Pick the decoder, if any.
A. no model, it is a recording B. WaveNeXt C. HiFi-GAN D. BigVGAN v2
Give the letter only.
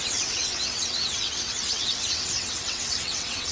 B